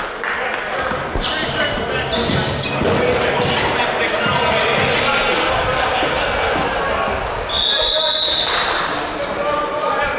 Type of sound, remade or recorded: recorded